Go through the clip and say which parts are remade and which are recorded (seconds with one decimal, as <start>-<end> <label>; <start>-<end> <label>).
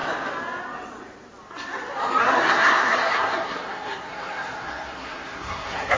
0.0-2.2 recorded; 2.2-6.0 remade